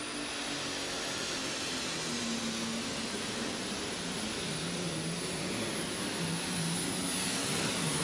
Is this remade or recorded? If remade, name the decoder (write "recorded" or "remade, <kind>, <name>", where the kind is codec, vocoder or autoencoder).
recorded